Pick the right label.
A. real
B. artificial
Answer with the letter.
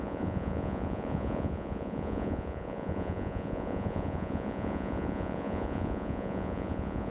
B